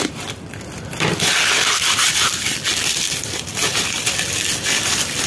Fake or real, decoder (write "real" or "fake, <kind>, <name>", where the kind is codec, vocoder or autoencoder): real